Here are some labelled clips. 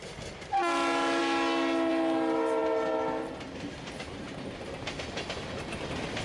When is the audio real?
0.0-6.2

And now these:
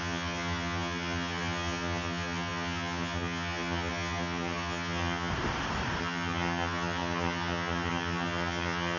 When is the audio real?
5.3-6.0

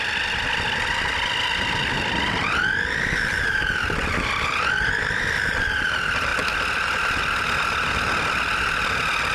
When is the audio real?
0.0-9.3

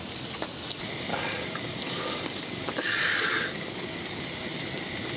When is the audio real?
0.0-1.1; 4.2-5.2

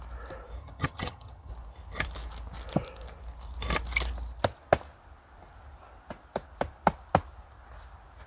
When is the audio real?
0.0-0.6; 1.5-8.3

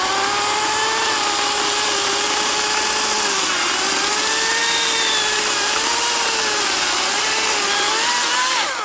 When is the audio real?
0.0-8.8